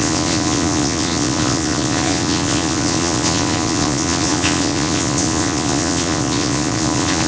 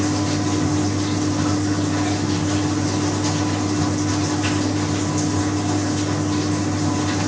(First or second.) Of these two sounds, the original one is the second